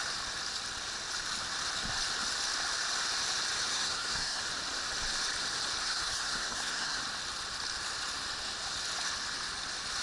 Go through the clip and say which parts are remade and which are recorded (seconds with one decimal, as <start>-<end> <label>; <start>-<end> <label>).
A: 0.0-3.7 recorded; 3.7-4.4 remade; 4.4-5.8 recorded; 5.8-7.0 remade; 7.0-10.0 recorded